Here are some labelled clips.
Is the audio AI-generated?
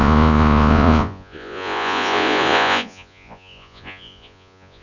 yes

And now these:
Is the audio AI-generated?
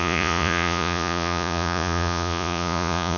yes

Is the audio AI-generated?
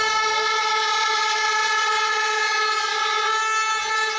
no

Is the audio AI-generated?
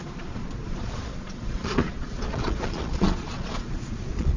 yes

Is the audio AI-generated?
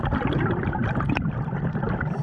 yes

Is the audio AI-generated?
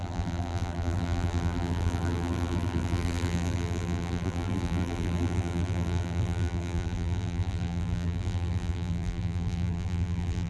yes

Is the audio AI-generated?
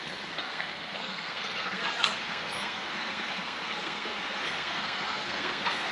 yes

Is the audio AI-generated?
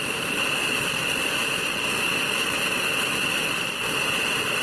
no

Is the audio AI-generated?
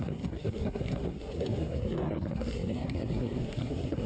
yes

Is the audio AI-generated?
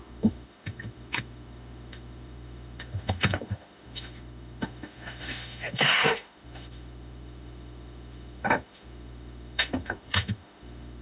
yes